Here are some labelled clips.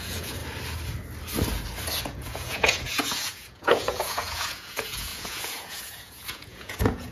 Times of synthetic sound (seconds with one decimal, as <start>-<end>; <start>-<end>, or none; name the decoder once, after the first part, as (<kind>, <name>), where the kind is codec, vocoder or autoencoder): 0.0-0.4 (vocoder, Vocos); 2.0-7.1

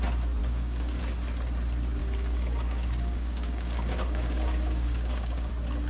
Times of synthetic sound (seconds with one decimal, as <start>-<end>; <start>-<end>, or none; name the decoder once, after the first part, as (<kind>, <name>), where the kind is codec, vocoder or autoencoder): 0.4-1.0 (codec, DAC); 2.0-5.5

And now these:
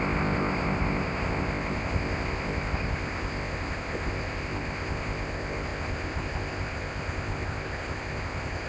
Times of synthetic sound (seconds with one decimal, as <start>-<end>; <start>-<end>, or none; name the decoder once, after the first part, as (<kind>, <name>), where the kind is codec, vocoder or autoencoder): 0.0-8.7 (codec, ZipCodec)

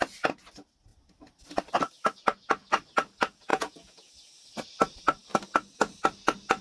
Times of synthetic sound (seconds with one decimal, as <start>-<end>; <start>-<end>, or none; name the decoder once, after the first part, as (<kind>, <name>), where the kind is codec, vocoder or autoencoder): 3.5-4.1 (vocoder, Vocos)

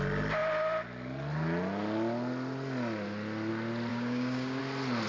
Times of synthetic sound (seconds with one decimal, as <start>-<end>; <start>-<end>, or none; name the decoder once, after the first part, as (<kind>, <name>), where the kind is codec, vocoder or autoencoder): 3.9-4.6 (codec, DAC)